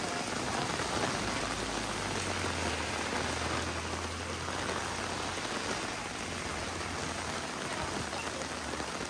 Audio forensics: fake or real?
real